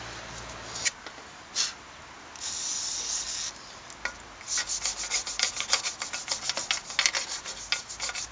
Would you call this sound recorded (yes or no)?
yes